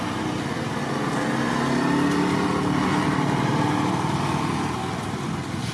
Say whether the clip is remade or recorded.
recorded